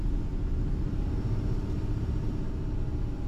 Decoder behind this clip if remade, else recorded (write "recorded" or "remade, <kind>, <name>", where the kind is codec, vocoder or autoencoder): recorded